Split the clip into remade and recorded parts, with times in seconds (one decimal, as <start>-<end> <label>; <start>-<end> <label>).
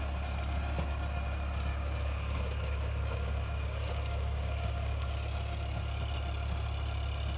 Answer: 0.0-1.7 recorded; 1.7-5.1 remade; 5.1-7.4 recorded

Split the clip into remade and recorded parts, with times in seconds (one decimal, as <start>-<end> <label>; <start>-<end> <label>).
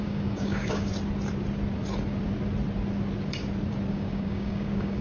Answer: 0.0-0.9 remade; 0.9-3.9 recorded; 3.9-5.0 remade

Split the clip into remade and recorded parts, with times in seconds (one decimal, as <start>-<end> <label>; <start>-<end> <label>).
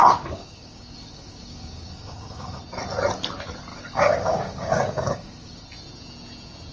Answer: 0.0-2.6 remade; 2.6-3.7 recorded; 3.7-5.6 remade; 5.6-6.7 recorded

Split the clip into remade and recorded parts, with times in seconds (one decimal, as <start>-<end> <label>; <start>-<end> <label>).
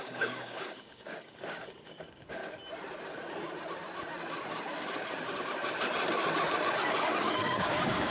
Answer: 0.0-2.4 remade; 2.4-7.3 recorded; 7.3-8.1 remade